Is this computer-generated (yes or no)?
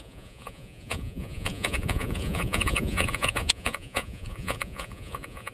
yes